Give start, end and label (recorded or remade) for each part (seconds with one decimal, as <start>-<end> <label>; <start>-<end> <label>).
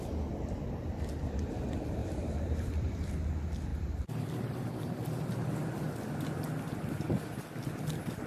0.0-2.0 recorded; 2.0-3.1 remade; 3.1-3.7 recorded; 3.7-6.2 remade; 6.2-8.3 recorded